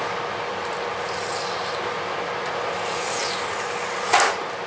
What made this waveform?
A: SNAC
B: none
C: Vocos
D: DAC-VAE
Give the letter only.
B